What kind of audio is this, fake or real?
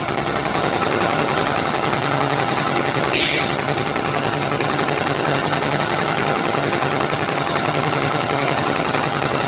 fake